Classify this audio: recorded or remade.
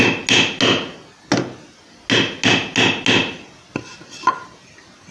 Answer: recorded